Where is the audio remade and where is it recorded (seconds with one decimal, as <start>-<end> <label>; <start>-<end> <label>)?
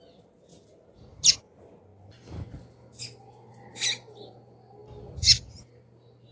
0.0-6.3 recorded